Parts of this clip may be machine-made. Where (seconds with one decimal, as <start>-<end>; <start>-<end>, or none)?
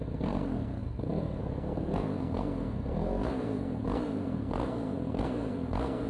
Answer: 0.0-6.1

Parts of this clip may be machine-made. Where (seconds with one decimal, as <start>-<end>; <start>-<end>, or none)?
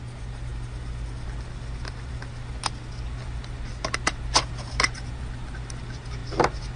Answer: none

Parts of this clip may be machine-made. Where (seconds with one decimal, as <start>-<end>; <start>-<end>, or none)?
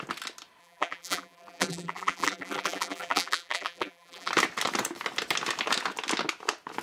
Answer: 0.6-4.3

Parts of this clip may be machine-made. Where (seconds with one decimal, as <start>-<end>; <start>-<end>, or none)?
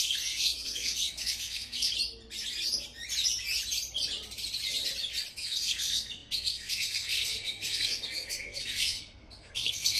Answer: 0.0-1.9; 5.3-10.0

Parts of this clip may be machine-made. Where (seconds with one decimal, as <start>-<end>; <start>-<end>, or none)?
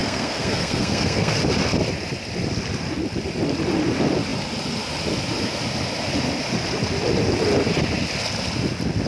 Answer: 0.0-1.4